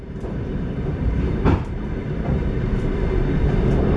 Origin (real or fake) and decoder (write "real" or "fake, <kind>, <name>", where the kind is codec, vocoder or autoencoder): fake, vocoder, BigVGAN v2